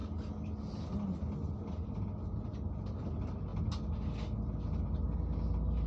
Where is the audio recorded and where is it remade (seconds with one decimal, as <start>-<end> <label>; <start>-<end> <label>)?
0.0-5.9 recorded